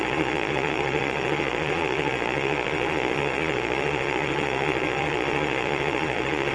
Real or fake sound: fake